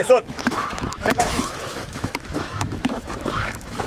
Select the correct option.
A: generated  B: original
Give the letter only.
A